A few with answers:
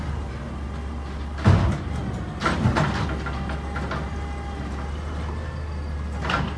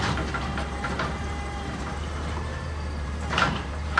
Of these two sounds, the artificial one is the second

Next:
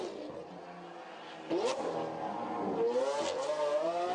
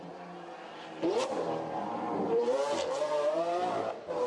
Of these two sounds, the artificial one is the second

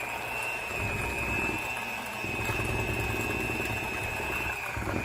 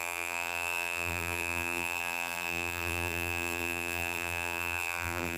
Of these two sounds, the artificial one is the second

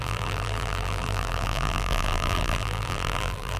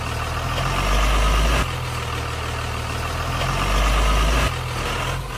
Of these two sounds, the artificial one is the first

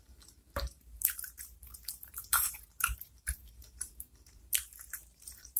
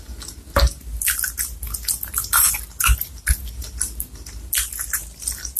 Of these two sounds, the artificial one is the first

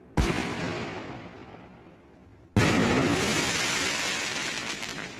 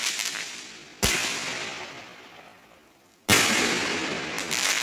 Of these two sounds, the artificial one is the second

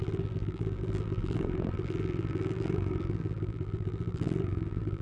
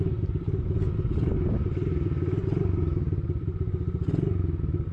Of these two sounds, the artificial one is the first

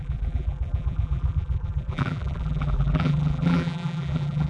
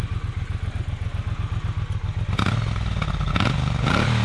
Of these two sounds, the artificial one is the first